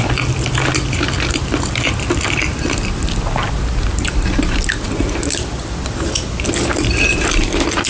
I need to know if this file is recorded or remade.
recorded